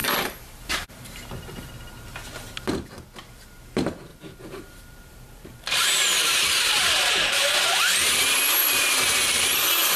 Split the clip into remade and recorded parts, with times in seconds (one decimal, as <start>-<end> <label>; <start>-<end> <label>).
0.0-1.7 remade; 1.7-4.1 recorded; 4.1-9.3 remade; 9.3-10.0 recorded